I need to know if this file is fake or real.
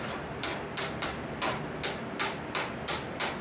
real